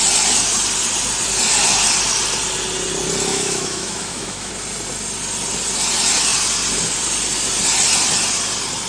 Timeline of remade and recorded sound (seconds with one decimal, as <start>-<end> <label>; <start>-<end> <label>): 0.0-3.3 recorded; 3.3-4.5 remade; 4.5-8.9 recorded